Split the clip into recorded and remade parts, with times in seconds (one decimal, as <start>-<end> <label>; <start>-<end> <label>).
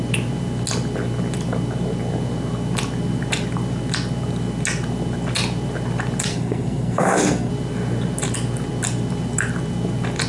0.0-6.3 recorded; 6.3-7.5 remade; 7.5-10.3 recorded